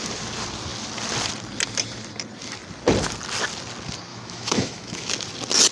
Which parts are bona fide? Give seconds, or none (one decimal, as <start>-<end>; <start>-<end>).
0.0-4.1; 5.1-5.7